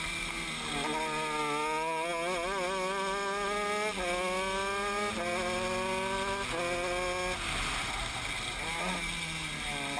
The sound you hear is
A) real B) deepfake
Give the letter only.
A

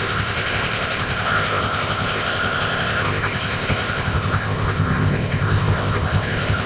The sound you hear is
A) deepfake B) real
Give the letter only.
A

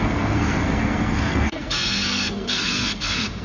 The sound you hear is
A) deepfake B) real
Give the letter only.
A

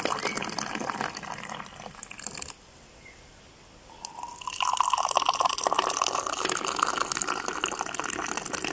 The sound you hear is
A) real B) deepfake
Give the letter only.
A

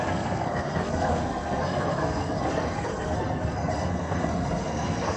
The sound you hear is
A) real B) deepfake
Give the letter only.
B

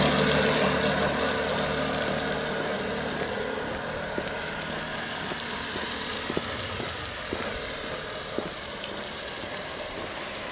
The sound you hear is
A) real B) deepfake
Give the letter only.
A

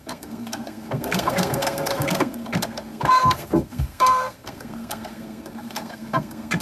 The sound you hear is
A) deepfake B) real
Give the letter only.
A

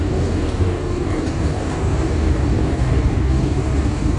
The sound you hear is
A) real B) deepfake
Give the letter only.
B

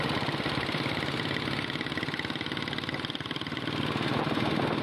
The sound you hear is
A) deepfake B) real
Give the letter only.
B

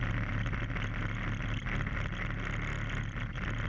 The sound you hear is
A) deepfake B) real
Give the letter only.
B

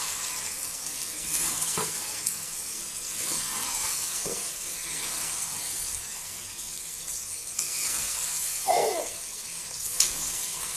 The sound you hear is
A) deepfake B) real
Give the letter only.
A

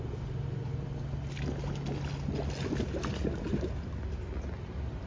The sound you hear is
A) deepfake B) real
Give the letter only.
B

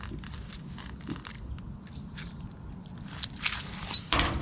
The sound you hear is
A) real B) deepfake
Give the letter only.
A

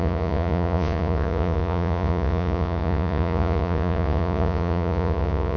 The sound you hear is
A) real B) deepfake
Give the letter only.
B